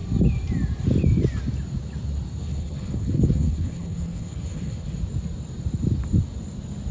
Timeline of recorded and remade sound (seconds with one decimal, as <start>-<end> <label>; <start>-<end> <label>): 0.0-2.4 recorded; 2.4-4.9 remade; 4.9-6.9 recorded